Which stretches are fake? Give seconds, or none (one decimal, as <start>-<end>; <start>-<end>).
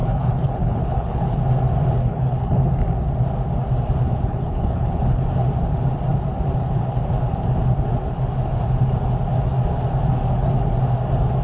0.0-1.4; 2.0-2.6; 4.3-5.2